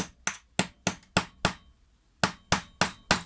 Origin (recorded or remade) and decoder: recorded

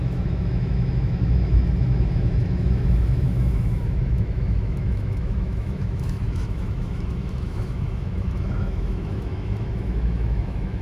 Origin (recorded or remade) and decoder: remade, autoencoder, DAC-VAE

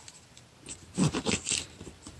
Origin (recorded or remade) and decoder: recorded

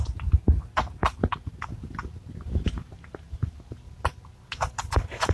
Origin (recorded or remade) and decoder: recorded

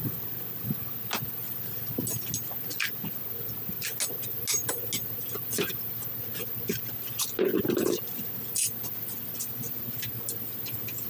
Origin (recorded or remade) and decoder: recorded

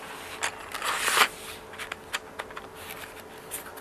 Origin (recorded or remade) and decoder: recorded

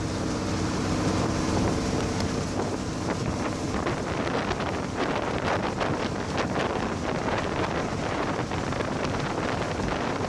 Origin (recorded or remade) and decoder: remade, vocoder, BigVGAN v2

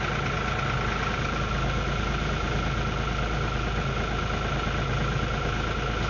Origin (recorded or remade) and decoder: recorded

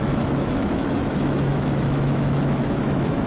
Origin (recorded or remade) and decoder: remade, autoencoder, DAC-VAE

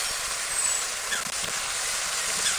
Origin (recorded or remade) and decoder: recorded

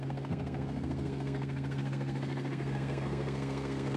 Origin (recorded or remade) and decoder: remade, codec, SNAC